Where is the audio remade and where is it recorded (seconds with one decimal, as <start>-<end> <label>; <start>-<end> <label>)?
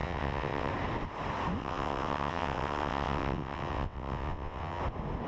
0.0-0.7 remade; 0.7-1.6 recorded; 1.6-4.8 remade; 4.8-5.3 recorded